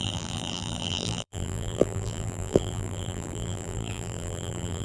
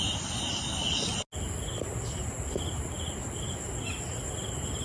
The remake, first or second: first